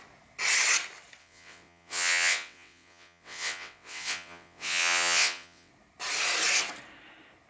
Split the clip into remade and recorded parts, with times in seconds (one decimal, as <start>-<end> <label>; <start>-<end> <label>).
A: 0.0-1.2 recorded; 1.2-5.7 remade; 5.7-7.5 recorded